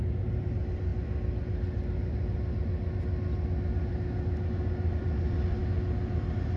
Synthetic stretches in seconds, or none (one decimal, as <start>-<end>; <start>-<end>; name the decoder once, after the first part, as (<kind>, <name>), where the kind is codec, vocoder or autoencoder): 0.0-0.9 (vocoder, BigVGAN v2); 4.9-5.6